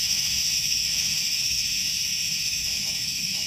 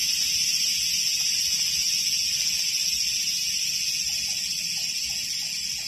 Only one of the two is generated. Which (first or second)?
first